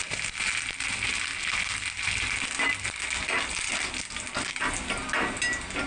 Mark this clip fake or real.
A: real